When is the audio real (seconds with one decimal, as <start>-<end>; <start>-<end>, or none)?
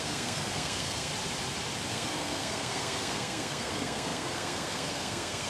1.1-1.9